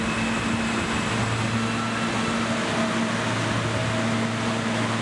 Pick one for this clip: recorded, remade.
recorded